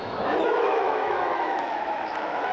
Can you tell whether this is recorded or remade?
remade